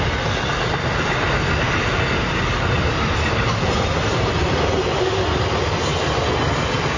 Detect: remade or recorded recorded